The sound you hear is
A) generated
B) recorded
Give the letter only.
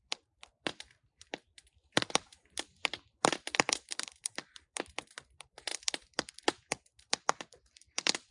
A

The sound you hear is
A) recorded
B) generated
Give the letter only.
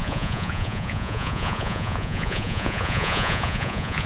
B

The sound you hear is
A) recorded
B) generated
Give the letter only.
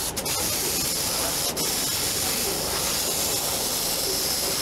A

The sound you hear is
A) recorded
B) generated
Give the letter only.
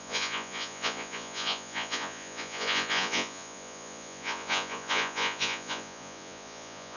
B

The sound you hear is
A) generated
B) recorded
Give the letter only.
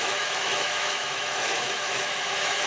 A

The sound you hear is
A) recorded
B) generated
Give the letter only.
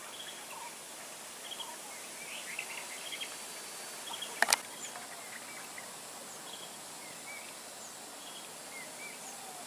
A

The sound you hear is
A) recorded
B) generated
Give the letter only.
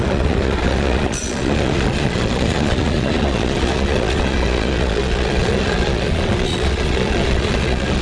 B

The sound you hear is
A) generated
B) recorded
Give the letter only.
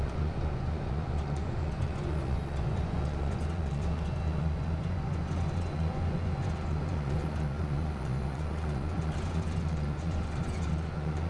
A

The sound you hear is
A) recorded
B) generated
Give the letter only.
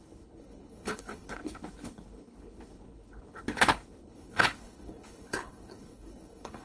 B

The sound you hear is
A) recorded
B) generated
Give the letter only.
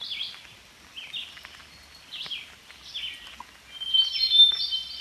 A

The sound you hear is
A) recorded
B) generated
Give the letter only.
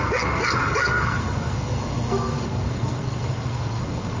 B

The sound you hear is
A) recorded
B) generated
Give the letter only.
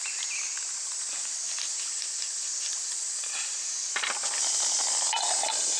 A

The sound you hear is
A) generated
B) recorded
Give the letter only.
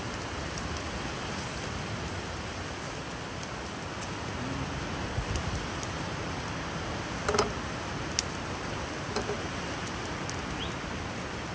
B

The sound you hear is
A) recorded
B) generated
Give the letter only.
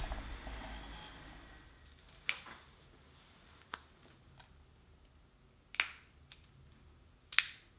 A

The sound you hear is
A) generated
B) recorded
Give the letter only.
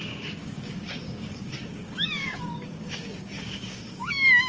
A